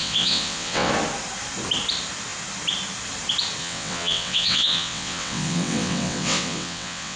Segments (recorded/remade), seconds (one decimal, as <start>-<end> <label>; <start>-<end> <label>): 0.0-0.9 remade; 0.9-3.6 recorded; 3.6-7.2 remade